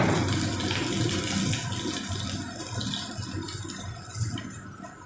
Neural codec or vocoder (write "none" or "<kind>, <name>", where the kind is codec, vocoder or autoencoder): none